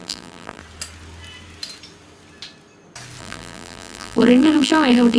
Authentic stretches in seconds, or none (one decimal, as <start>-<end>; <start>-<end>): 0.6-3.2

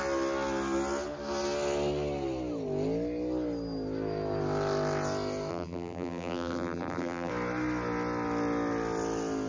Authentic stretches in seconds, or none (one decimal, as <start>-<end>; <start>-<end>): 0.0-5.5; 7.3-9.5

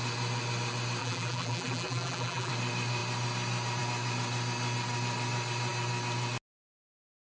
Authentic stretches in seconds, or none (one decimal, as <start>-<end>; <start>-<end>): 0.0-1.0; 2.5-7.2